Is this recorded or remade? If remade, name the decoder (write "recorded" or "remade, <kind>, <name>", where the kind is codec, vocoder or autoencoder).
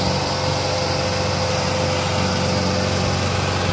recorded